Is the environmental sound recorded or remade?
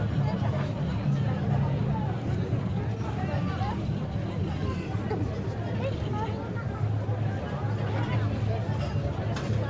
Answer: recorded